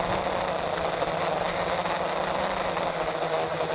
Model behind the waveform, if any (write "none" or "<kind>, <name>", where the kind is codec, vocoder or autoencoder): none